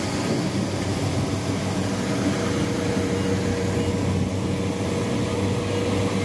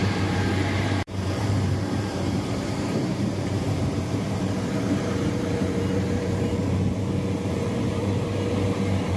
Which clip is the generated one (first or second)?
second